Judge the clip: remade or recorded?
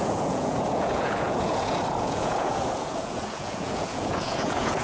remade